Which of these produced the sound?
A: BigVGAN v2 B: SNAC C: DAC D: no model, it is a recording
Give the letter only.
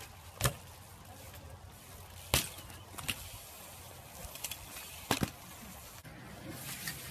D